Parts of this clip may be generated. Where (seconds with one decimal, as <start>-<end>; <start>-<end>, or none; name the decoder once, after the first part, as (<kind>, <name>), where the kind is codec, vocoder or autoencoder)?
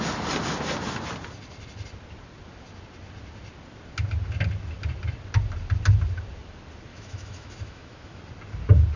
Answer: 6.9-8.2 (autoencoder, DAC-VAE)